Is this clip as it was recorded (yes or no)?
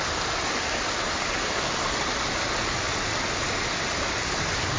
yes